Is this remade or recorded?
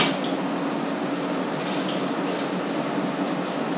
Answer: recorded